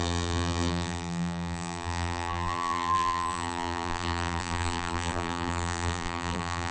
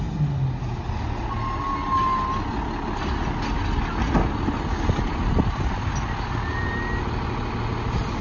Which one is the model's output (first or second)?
first